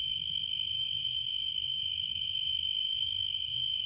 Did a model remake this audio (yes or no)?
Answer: yes